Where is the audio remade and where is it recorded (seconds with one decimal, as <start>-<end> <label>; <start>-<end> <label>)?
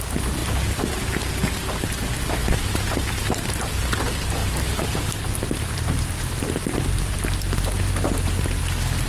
0.0-4.4 recorded; 4.4-8.6 remade; 8.6-9.1 recorded